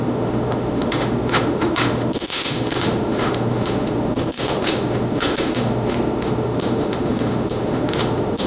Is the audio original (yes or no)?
no